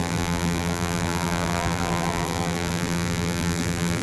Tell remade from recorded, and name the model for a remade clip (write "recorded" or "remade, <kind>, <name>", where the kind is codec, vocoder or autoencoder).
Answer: remade, vocoder, BigVGAN v2